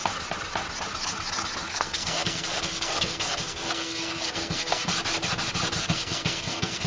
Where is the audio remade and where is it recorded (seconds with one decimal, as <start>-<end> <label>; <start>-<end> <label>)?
0.0-1.7 recorded; 1.7-4.9 remade; 4.9-5.8 recorded; 5.8-6.9 remade